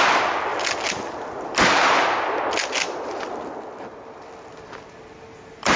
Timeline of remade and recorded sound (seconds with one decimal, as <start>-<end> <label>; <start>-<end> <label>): 0.0-0.5 remade; 0.5-2.7 recorded; 2.7-5.8 remade